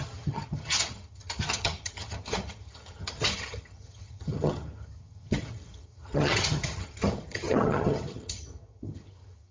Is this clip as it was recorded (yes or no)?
no